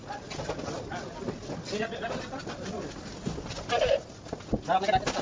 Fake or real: real